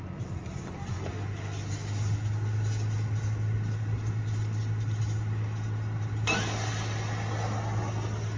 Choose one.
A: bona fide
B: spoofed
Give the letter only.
A